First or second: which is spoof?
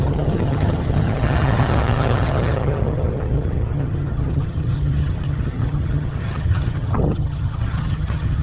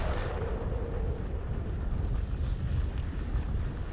first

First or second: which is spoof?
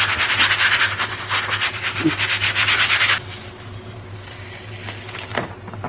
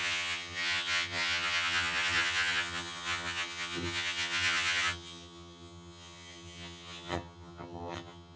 second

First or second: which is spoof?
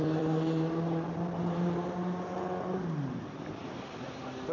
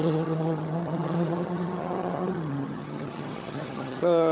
second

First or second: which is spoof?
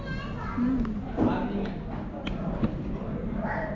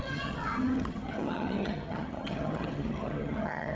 second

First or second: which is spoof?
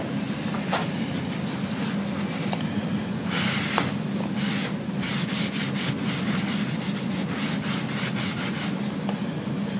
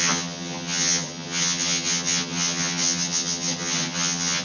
second